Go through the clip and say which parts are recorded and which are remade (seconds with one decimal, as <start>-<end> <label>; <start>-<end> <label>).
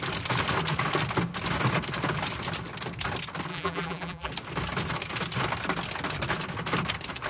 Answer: 0.0-3.5 recorded; 3.5-4.3 remade; 4.3-7.3 recorded